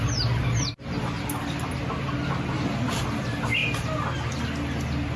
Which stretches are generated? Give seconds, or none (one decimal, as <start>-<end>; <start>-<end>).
none